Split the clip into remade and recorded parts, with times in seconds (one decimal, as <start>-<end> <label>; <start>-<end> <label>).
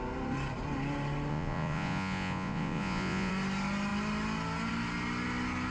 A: 0.0-1.3 recorded; 1.3-3.3 remade; 3.3-5.7 recorded